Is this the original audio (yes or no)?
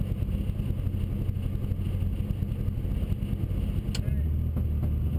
yes